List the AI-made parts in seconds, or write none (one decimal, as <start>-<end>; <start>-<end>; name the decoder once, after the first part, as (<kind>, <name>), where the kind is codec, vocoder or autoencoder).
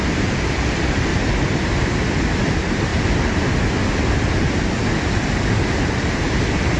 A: 0.0-1.1 (vocoder, BigVGAN v2); 2.5-2.9; 5.7-6.8